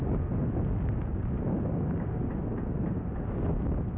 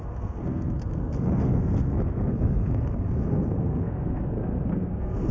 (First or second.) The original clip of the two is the first